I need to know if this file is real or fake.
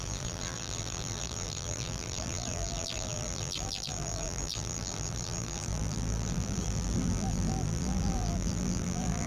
fake